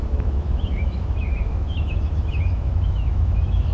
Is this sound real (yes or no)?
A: no